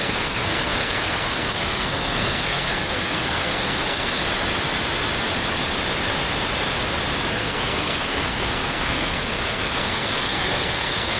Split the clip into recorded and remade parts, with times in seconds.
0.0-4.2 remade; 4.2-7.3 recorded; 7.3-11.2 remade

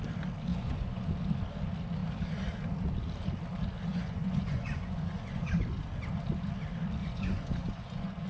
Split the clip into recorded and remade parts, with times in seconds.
0.0-0.5 recorded; 0.5-1.1 remade; 1.1-3.9 recorded; 3.9-5.5 remade; 5.5-7.0 recorded; 7.0-8.3 remade

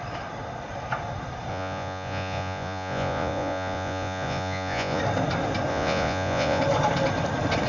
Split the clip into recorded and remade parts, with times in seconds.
0.0-1.5 recorded; 1.5-5.0 remade; 5.0-5.7 recorded; 5.7-6.6 remade; 6.6-7.7 recorded

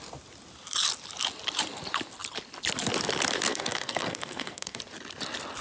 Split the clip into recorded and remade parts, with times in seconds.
0.0-3.5 recorded; 3.5-4.8 remade; 4.8-5.6 recorded

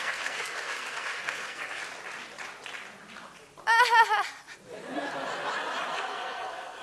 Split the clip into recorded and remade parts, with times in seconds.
0.0-1.8 remade; 1.8-5.9 recorded; 5.9-6.8 remade

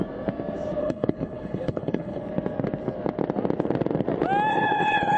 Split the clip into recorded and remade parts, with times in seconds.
0.0-0.8 recorded; 0.8-2.2 remade; 2.2-4.5 recorded; 4.5-5.2 remade

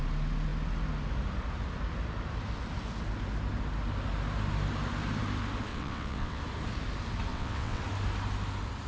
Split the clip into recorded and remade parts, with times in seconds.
0.0-5.7 recorded; 5.7-6.4 remade; 6.4-7.3 recorded; 7.3-7.8 remade; 7.8-8.9 recorded

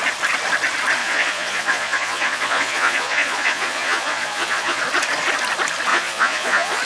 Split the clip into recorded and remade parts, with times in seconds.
0.0-1.0 recorded; 1.0-4.8 remade; 4.8-5.9 recorded; 5.9-6.8 remade